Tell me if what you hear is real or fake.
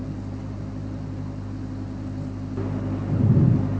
real